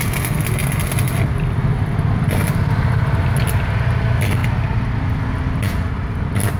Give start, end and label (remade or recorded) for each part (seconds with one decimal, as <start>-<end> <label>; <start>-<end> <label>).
0.0-6.6 recorded